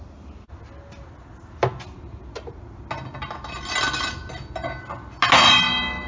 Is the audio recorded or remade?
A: recorded